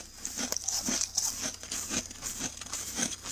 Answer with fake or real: real